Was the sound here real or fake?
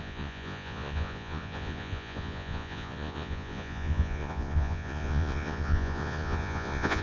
fake